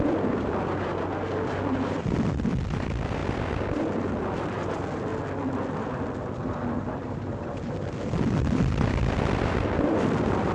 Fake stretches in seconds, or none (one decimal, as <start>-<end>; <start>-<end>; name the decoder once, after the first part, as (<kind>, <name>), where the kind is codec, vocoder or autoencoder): 0.0-3.2 (vocoder, BigVGAN v2); 3.7-5.1; 6.8-10.5